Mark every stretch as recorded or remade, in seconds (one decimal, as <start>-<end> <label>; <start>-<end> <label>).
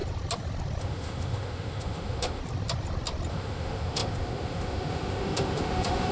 0.0-0.8 recorded; 0.8-2.4 remade; 2.4-3.3 recorded; 3.3-6.1 remade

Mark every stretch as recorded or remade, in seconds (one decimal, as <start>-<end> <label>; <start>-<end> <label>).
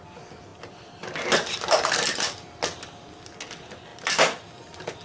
0.0-5.0 recorded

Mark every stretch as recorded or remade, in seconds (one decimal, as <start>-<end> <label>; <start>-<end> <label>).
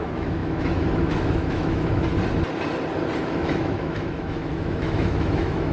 0.0-2.1 remade; 2.1-3.2 recorded; 3.2-5.7 remade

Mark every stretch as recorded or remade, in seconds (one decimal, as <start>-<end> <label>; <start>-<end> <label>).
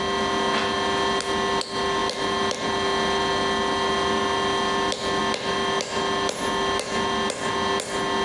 0.0-8.2 recorded